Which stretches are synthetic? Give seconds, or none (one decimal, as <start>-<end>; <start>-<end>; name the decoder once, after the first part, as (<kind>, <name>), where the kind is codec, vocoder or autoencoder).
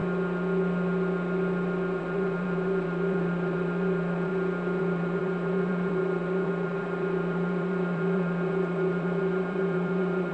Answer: 2.0-4.3 (vocoder, BigVGAN v2); 4.8-10.3